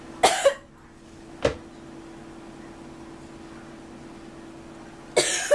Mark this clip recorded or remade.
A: recorded